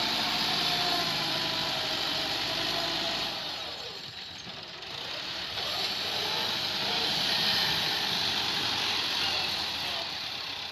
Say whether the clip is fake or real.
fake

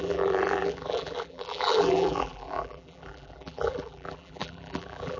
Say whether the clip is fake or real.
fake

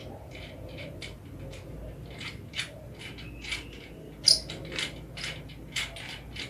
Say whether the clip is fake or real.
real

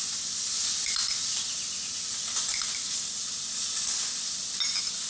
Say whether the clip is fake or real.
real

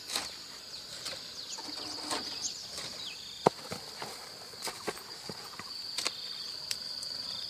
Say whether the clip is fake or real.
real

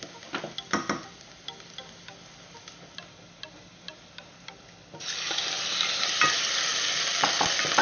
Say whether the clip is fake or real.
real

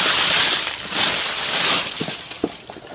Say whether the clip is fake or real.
real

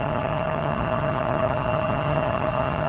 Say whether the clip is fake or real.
fake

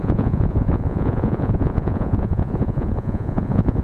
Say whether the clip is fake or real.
fake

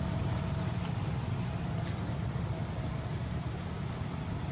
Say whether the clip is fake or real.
real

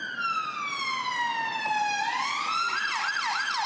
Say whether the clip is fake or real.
real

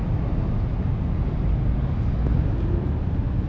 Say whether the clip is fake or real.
real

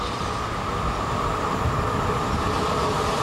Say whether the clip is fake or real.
real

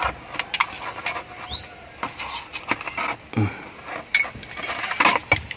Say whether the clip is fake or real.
real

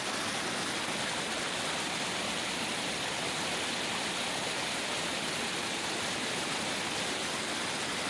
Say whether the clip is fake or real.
real